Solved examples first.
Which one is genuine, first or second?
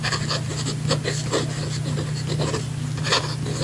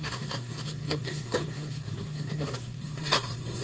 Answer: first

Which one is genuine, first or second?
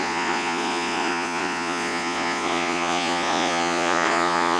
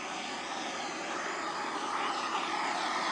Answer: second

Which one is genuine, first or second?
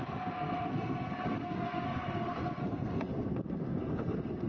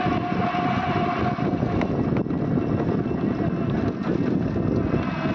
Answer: second